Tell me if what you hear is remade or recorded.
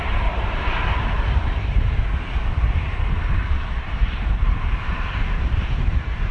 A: remade